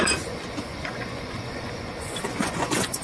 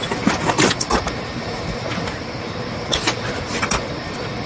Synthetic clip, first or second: first